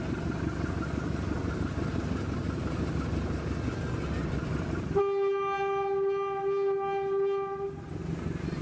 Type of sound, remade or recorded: recorded